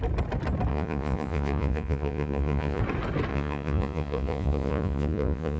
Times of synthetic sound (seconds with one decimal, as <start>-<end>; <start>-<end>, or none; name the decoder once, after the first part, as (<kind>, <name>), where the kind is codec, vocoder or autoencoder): 0.7-2.8 (vocoder, Vocos); 3.3-5.6